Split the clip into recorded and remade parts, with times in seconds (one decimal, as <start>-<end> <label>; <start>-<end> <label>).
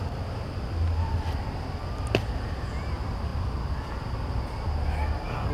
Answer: 0.0-3.3 recorded; 3.3-4.0 remade; 4.0-5.5 recorded